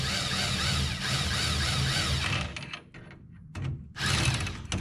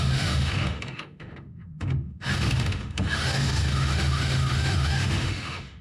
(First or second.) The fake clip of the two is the second